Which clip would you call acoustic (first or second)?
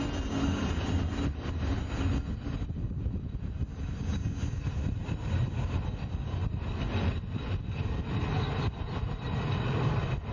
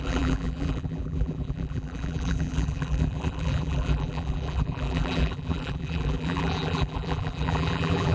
first